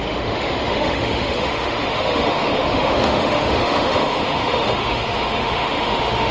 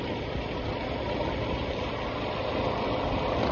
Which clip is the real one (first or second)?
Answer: second